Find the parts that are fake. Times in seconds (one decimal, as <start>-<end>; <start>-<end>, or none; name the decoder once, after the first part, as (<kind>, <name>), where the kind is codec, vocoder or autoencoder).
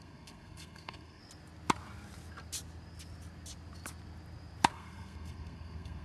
0.0-1.2 (codec, SNAC); 4.7-6.0